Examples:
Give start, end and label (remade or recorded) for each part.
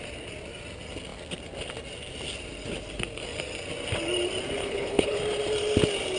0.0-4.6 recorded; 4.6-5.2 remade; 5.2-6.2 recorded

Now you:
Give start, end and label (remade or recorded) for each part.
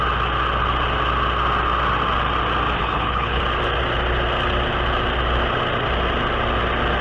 0.0-2.8 recorded; 2.8-3.4 remade; 3.4-7.0 recorded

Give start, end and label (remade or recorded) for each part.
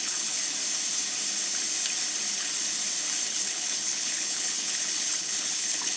0.0-0.4 remade; 0.4-3.3 recorded; 3.3-6.0 remade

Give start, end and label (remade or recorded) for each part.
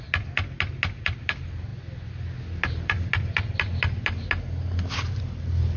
0.0-5.8 recorded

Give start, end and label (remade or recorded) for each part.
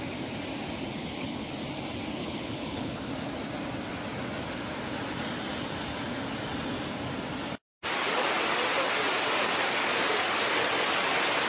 0.0-1.0 recorded; 1.0-1.5 remade; 1.5-2.2 recorded; 2.2-3.1 remade; 3.1-11.5 recorded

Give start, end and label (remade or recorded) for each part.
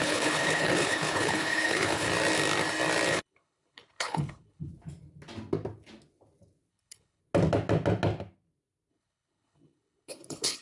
0.0-2.1 remade; 2.1-3.1 recorded; 3.1-4.7 remade; 4.7-6.7 recorded; 6.7-7.2 remade; 7.2-8.9 recorded; 8.9-10.6 remade